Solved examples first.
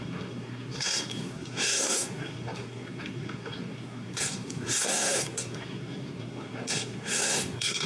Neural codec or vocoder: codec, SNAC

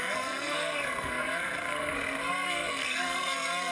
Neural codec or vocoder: codec, SNAC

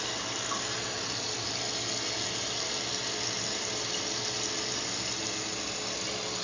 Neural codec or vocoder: none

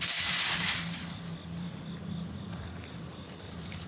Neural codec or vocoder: vocoder, BigVGAN v2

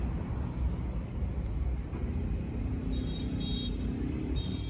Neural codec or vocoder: none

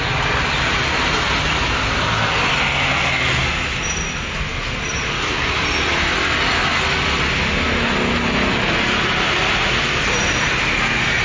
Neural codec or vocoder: none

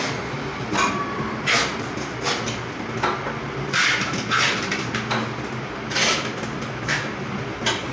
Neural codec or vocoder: none